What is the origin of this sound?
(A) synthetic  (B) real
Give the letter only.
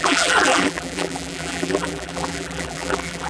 A